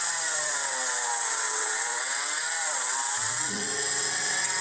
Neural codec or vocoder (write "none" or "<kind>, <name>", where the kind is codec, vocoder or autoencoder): vocoder, WaveNeXt